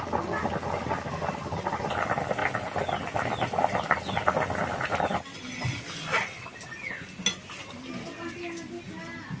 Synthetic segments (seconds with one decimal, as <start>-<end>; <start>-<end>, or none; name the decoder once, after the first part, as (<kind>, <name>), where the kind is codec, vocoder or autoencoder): none